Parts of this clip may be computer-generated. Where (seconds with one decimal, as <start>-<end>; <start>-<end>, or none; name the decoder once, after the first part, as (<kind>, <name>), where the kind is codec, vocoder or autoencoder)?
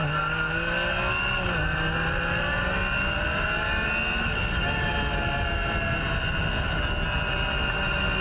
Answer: none